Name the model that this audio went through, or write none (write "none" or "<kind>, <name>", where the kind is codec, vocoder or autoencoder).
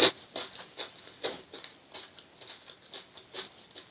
none